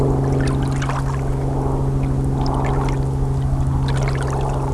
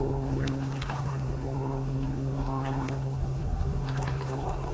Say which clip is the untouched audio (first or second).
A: first